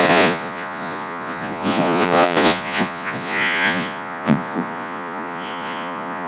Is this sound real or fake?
fake